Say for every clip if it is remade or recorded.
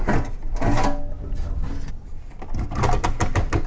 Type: recorded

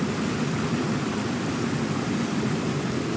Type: recorded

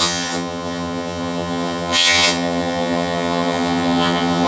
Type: remade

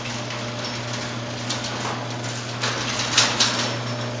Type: recorded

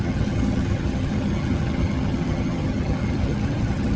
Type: remade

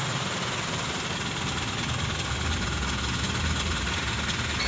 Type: recorded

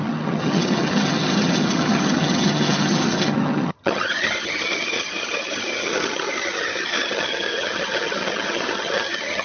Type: remade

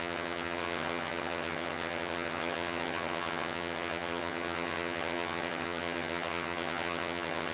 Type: remade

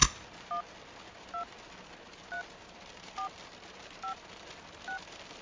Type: recorded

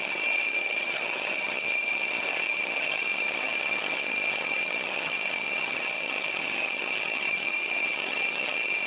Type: remade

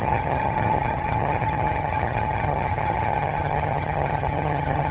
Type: remade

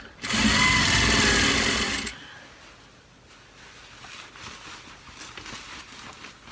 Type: recorded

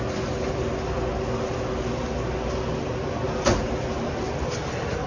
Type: recorded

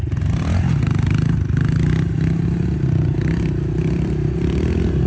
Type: recorded